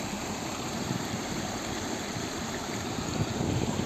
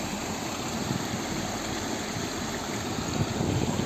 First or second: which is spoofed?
first